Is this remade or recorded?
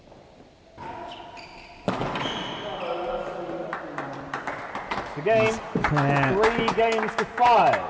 recorded